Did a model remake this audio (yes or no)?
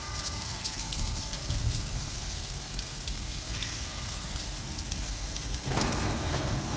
yes